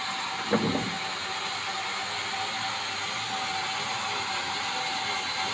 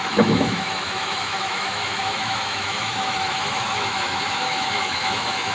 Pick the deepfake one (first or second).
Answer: second